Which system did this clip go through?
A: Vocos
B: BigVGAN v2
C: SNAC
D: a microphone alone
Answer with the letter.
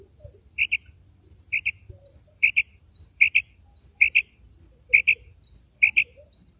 B